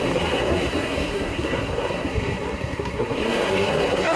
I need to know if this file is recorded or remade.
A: remade